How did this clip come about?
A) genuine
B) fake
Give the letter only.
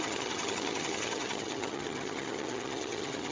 B